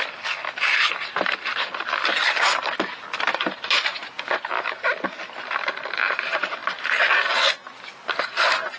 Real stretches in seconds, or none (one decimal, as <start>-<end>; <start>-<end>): 0.0-8.8